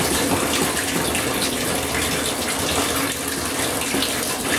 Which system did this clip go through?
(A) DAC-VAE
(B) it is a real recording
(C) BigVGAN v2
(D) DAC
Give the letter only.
B